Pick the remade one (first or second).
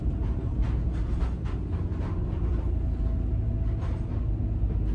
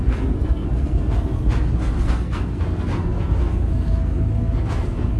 second